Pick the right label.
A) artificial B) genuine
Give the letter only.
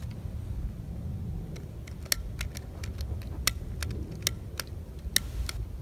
B